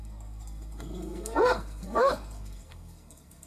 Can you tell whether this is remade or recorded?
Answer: remade